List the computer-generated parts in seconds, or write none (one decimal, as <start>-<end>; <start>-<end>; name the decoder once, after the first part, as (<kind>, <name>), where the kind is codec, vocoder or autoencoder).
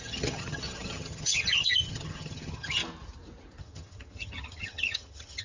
0.0-2.8 (vocoder, HiFi-GAN); 3.6-5.4